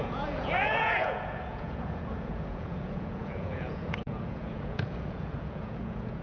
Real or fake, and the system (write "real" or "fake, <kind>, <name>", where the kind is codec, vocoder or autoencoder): fake, vocoder, Vocos